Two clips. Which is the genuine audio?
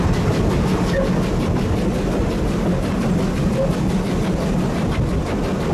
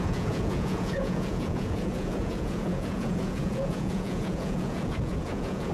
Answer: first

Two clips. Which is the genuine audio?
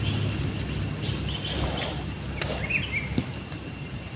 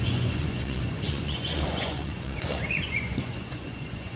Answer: first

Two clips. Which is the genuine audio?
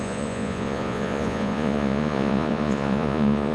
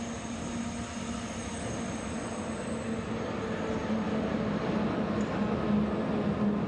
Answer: second